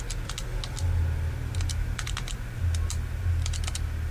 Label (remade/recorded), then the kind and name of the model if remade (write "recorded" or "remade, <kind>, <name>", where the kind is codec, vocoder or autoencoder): recorded